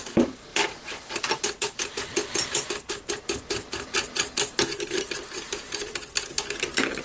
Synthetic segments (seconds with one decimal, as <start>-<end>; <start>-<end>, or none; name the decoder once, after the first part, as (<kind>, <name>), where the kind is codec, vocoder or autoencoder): none